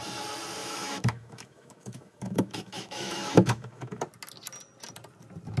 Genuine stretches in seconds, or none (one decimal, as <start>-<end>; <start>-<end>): 0.0-0.6; 4.0-5.6